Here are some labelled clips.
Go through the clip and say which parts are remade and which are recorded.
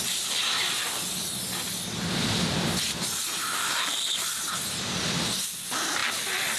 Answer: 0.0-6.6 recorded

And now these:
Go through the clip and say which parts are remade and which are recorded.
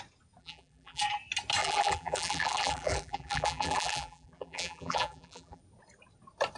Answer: 0.0-0.4 recorded; 0.4-1.0 remade; 1.0-1.6 recorded; 1.6-5.6 remade; 5.6-6.6 recorded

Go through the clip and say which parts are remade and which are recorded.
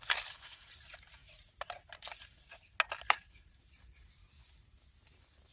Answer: 0.0-5.5 recorded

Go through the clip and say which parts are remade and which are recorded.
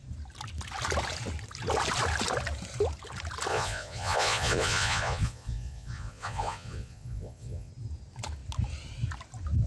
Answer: 0.0-3.5 recorded; 3.5-7.7 remade; 7.7-9.7 recorded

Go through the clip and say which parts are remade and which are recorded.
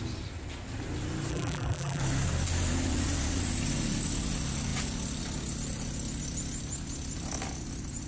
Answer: 0.0-1.3 recorded; 1.3-2.0 remade; 2.0-8.1 recorded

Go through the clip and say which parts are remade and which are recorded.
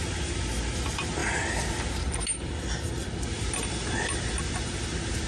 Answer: 0.0-5.3 recorded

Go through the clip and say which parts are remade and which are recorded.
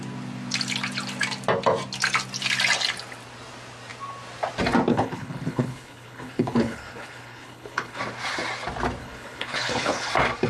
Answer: 0.0-4.9 recorded; 4.9-8.0 remade; 8.0-9.0 recorded; 9.0-10.1 remade; 10.1-10.5 recorded